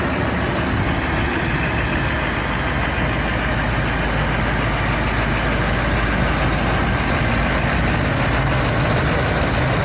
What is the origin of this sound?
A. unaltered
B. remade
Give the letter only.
A